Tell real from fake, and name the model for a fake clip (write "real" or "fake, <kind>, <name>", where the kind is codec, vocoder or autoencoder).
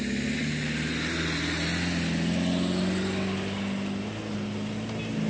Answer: real